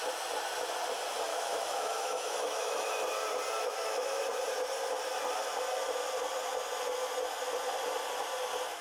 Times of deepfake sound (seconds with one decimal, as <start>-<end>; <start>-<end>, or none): 1.3-2.9; 3.6-4.2